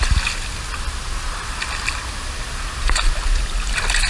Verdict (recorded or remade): recorded